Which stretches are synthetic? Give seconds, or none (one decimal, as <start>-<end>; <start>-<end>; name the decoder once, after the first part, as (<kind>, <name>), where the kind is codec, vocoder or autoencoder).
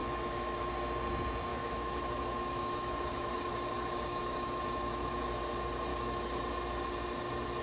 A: 0.0-0.7 (autoencoder, DAC-VAE); 1.5-5.4; 5.9-6.4